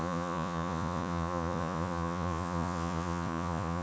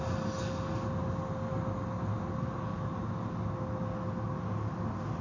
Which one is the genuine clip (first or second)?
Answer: second